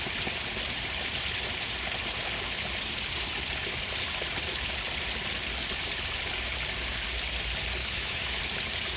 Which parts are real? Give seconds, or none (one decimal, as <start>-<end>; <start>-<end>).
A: 0.0-7.8; 8.4-9.0